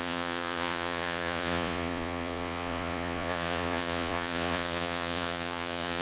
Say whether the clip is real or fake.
fake